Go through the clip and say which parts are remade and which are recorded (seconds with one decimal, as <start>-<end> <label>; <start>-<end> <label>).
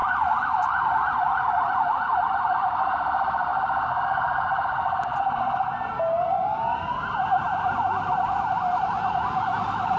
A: 0.0-1.2 recorded; 1.2-10.0 remade